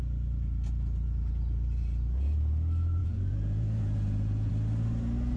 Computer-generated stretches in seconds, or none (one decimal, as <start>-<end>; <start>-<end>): 3.0-4.5